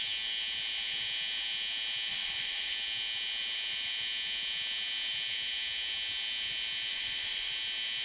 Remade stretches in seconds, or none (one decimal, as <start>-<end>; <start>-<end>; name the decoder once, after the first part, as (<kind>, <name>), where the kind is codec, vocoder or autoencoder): 2.1-2.7 (vocoder, Vocos); 6.9-7.5